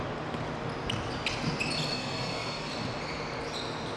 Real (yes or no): yes